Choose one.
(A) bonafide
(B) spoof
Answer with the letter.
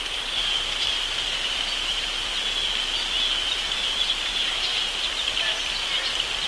A